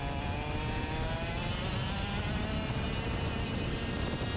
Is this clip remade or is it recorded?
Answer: recorded